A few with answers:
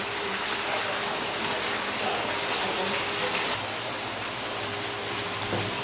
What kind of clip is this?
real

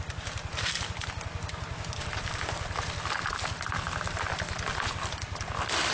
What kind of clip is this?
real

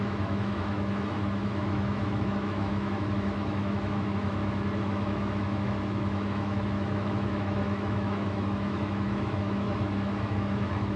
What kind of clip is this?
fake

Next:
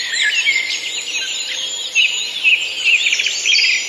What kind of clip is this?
real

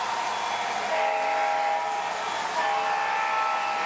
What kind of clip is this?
real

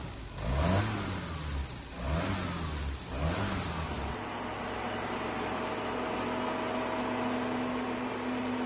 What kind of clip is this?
real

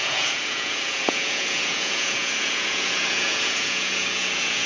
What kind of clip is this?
fake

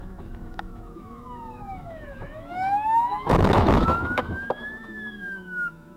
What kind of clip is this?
fake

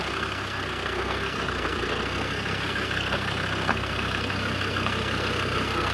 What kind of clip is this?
fake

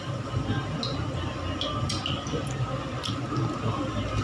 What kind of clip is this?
real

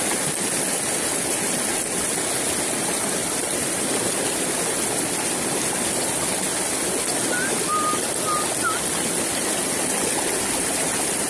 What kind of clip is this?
real